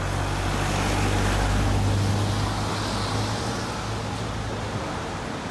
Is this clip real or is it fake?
real